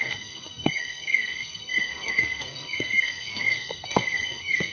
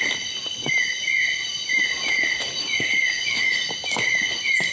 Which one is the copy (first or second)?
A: first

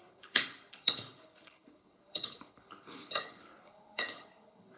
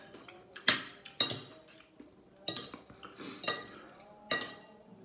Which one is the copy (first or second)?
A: first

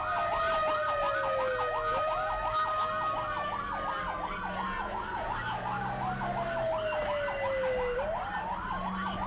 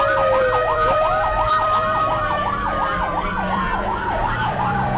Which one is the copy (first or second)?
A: second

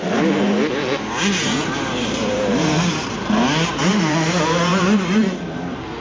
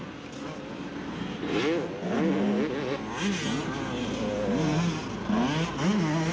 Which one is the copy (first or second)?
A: first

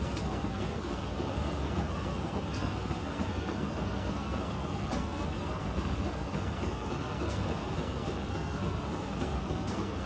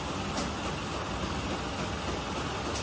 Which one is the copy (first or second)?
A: first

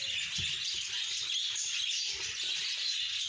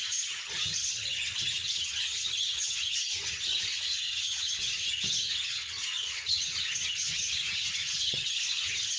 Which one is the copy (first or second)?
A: second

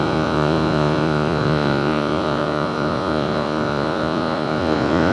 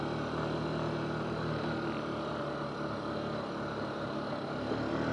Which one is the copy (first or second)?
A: first